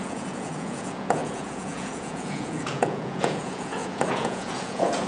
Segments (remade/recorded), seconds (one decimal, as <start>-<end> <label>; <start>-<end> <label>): 0.0-5.1 remade